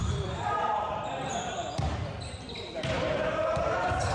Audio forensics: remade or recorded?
remade